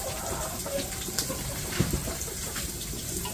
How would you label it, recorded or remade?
remade